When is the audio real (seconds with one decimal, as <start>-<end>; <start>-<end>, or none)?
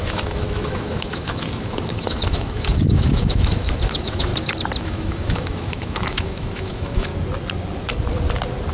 4.3-4.8; 7.1-8.7